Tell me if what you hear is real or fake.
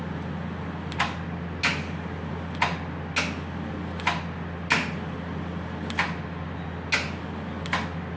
real